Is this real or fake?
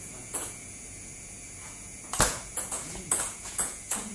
fake